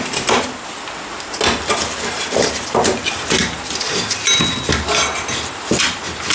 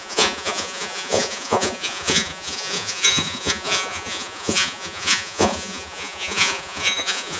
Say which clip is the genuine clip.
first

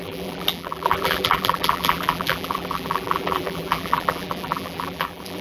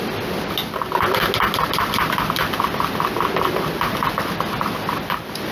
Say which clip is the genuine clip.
second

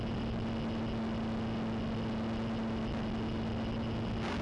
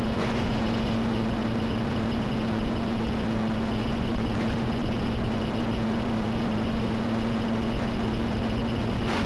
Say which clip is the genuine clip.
first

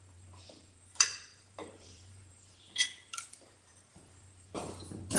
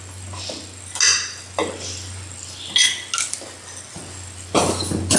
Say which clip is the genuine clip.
second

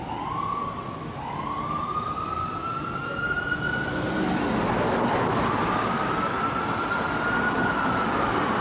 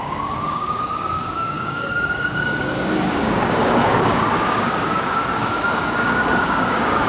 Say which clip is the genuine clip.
first